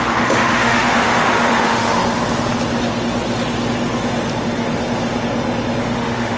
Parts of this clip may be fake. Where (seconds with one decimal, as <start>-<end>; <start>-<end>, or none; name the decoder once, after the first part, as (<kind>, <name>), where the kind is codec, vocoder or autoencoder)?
0.0-2.0 (autoencoder, DAC-VAE); 5.8-6.4

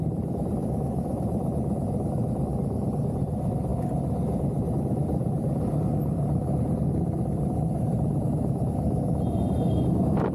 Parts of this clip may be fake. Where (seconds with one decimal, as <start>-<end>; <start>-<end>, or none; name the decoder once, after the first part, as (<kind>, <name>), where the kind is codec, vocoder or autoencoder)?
none

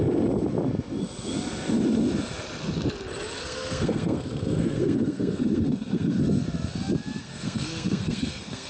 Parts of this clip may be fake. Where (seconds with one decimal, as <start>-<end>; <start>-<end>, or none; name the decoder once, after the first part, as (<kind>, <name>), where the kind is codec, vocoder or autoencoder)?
3.4-6.2 (codec, SNAC); 7.2-8.7

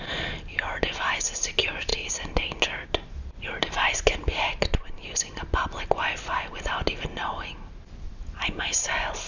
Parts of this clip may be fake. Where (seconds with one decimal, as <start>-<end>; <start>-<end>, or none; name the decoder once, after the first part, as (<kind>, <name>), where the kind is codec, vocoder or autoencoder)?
none

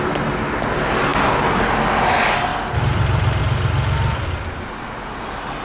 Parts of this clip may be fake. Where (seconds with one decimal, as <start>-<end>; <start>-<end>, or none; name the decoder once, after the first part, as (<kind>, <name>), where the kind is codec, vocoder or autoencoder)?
2.5-3.4 (vocoder, BigVGAN v2)

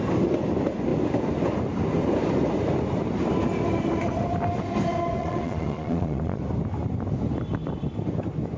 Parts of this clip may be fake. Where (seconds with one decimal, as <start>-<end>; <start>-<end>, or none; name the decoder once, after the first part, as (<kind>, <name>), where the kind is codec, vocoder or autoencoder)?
5.2-6.4 (vocoder, Vocos)

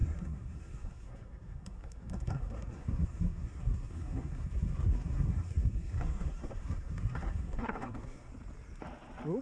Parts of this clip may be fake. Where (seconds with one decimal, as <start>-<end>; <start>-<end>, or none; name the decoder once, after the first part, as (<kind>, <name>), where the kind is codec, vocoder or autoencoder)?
0.0-8.3 (codec, SNAC)

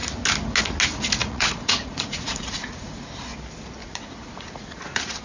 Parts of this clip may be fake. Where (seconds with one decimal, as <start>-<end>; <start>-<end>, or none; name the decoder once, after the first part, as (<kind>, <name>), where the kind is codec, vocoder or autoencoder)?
1.2-3.1 (vocoder, Vocos); 3.8-5.2